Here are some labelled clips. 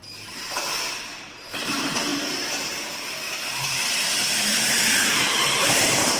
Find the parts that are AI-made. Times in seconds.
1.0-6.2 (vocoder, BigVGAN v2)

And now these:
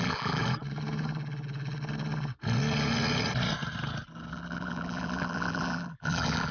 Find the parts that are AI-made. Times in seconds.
0.0-0.4 (vocoder, BigVGAN v2); 4.3-6.5

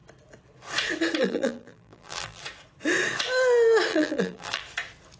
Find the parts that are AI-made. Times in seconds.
1.2-2.4 (vocoder, BigVGAN v2); 3.9-4.6

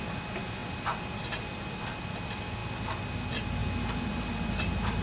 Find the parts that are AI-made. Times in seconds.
0.0-2.6 (vocoder, BigVGAN v2); 3.2-3.6; 4.6-5.0